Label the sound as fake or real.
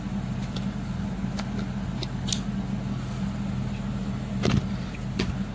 real